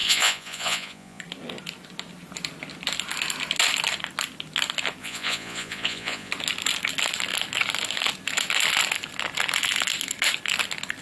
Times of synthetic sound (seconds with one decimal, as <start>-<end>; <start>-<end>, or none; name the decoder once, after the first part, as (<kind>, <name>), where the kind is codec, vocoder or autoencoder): 0.0-1.2 (vocoder, Vocos); 5.0-6.3